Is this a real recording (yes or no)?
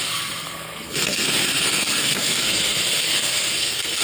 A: no